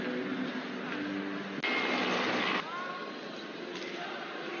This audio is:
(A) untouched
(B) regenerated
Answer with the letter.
A